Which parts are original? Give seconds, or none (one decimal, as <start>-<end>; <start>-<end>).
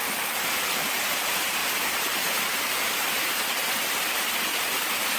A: 0.0-5.2